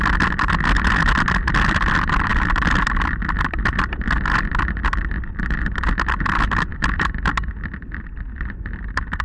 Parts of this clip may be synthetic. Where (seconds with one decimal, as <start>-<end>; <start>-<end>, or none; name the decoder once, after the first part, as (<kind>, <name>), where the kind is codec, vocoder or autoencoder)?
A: none